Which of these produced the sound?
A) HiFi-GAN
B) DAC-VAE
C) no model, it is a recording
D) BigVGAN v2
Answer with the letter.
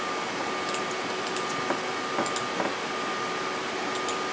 C